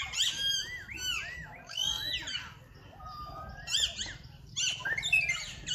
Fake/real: real